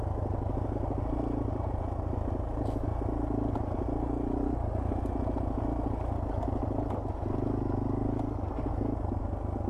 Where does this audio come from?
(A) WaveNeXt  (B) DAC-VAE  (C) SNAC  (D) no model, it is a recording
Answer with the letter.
D